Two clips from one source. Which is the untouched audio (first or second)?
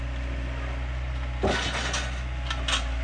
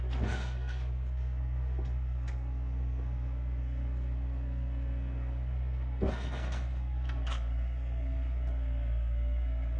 first